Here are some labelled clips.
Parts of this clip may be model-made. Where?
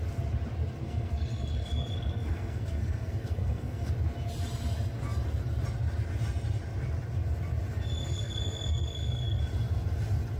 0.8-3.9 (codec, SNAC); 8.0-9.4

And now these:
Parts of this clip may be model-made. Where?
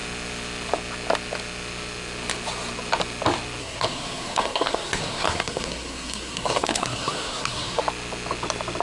3.6-7.8 (codec, SNAC)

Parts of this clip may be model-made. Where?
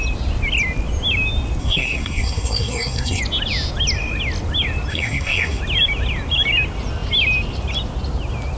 1.6-3.2 (codec, SNAC); 4.9-5.6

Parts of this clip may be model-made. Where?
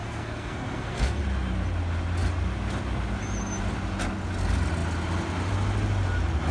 0.0-1.2 (codec, SNAC)